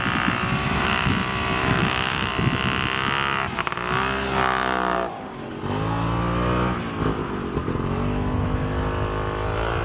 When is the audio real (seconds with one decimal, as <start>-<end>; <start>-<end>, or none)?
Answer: 0.0-0.6; 1.1-1.6; 2.3-9.8